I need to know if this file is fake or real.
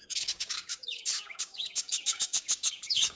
fake